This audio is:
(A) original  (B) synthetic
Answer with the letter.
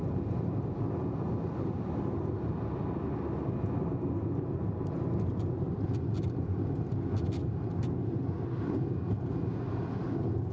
A